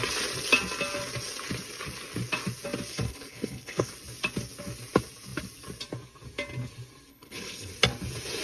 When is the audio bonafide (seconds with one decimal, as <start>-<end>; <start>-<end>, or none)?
0.0-2.9; 3.9-7.1; 7.7-8.4